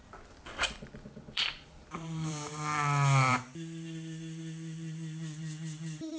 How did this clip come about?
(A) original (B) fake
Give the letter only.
B